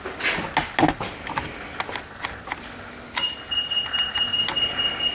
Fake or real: real